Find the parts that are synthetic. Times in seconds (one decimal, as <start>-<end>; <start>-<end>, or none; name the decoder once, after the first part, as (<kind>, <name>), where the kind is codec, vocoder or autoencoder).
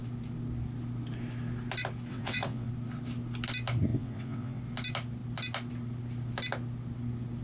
2.1-2.7 (vocoder, WaveNeXt); 3.9-4.6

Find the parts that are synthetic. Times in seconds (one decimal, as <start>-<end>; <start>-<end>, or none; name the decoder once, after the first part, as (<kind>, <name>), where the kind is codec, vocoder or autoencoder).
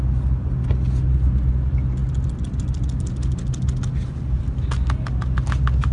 none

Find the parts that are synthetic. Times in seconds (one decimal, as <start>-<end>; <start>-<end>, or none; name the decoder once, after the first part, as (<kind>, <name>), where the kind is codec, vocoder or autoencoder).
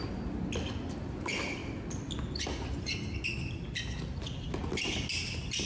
none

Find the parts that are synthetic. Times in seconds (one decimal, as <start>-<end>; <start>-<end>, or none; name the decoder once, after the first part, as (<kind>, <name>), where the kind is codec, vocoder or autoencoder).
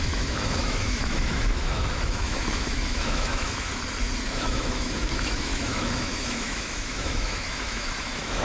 0.0-3.7 (autoencoder, DAC-VAE); 4.3-8.4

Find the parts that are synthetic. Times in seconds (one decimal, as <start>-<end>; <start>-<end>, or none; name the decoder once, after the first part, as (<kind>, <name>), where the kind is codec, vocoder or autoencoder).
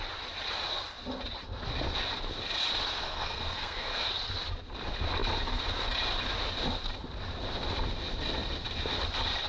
3.0-4.1 (codec, SNAC)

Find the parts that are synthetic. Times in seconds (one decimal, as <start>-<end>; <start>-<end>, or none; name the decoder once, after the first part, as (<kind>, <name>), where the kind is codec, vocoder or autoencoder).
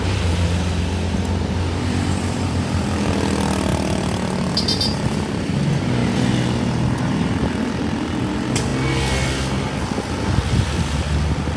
none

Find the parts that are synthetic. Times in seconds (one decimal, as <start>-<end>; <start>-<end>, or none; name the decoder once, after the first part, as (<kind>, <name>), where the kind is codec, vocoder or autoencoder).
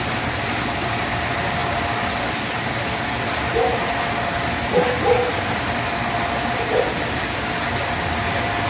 none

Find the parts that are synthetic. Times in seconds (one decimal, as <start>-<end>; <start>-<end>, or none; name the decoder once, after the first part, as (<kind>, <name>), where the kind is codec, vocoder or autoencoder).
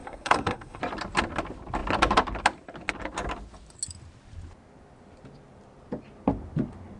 0.0-0.8 (codec, SNAC)